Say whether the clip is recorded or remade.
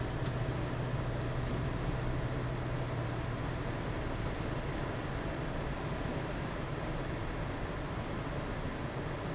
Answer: recorded